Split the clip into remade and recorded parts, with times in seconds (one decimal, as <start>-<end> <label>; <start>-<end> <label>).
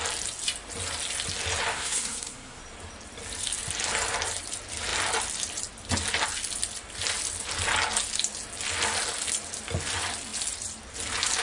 0.0-1.7 recorded; 1.7-2.6 remade; 2.6-11.4 recorded